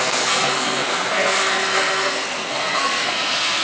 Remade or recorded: remade